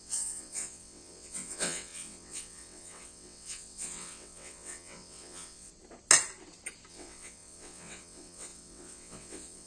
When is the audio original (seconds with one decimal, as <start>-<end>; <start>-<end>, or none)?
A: 5.7-6.9